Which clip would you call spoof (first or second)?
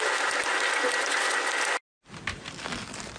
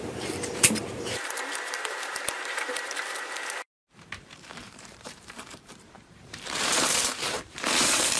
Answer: second